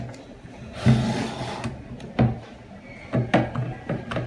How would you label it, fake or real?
real